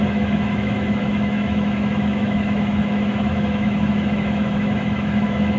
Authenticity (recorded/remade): remade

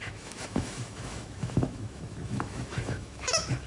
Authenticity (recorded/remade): remade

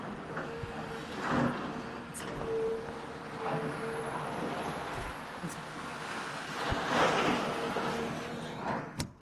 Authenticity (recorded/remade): recorded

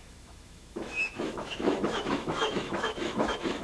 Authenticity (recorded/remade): remade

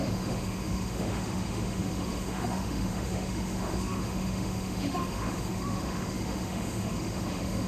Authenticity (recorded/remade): remade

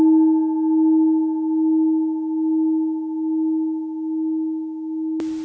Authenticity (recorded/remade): recorded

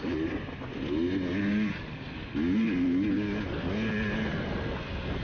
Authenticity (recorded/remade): recorded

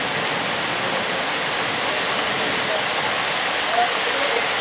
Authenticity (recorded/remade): recorded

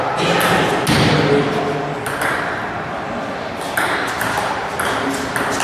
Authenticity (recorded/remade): recorded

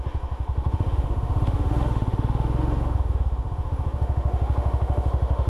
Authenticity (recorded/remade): remade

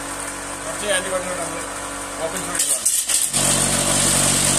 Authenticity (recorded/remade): recorded